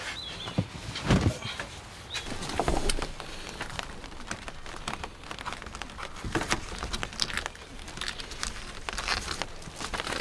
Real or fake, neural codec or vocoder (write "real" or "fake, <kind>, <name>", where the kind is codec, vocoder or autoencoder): real